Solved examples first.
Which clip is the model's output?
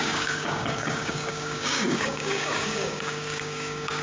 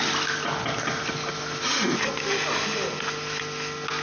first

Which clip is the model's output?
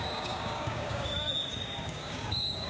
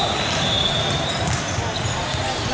first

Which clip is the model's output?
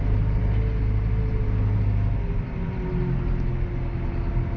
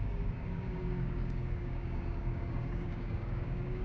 second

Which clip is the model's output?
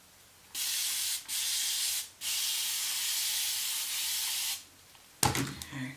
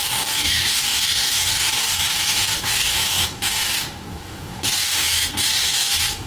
second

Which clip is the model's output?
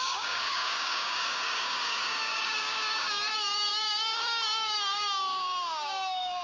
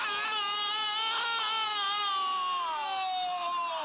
first